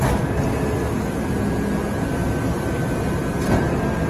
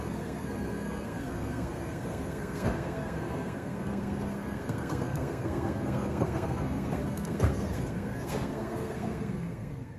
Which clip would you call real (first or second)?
first